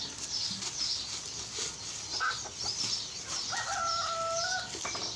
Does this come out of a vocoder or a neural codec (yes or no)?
no